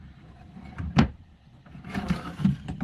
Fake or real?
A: fake